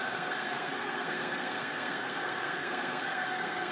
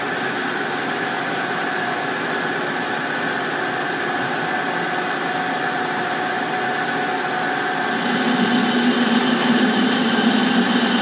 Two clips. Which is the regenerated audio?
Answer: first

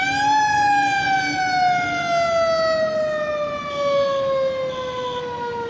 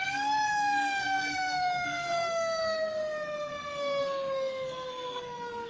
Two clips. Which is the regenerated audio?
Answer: second